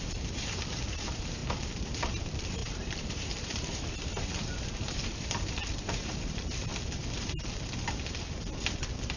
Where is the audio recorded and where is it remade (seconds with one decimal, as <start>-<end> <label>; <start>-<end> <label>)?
0.0-1.4 remade; 1.4-2.2 recorded; 2.2-6.7 remade; 6.7-9.2 recorded